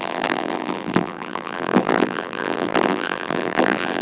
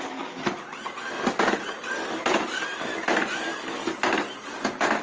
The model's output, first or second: first